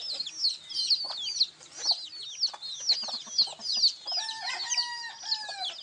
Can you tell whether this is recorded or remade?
recorded